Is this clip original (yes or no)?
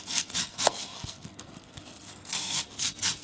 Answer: no